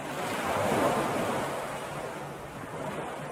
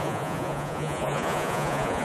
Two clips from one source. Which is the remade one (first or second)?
second